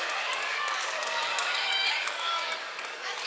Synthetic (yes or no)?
yes